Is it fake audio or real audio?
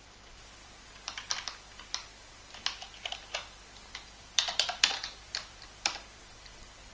fake